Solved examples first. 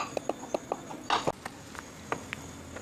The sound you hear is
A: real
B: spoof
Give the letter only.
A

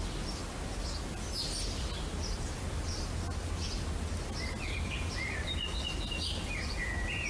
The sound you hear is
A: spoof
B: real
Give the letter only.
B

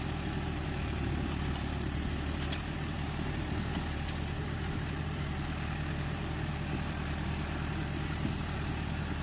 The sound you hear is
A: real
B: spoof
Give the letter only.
B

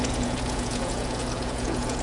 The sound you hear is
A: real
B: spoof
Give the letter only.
B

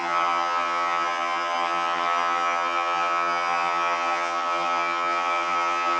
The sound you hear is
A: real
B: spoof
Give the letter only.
B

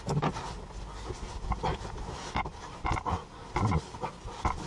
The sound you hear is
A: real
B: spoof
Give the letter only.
A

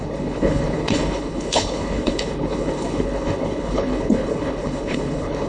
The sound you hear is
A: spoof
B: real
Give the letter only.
A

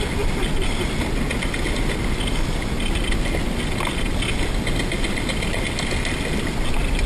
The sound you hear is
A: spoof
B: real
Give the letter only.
B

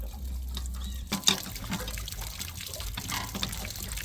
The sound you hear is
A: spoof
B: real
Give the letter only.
B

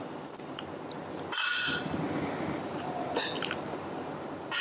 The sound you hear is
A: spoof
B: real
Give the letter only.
A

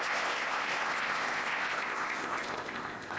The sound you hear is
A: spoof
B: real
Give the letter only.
A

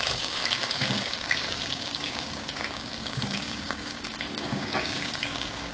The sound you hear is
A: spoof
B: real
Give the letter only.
A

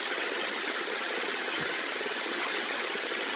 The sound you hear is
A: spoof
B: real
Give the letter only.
A